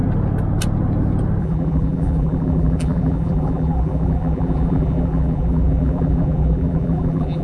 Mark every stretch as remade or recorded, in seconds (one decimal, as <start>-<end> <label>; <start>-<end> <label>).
0.0-1.4 recorded; 1.4-7.4 remade